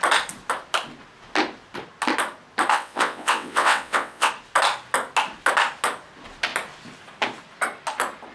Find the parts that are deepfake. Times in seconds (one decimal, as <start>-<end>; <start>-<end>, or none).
2.7-4.3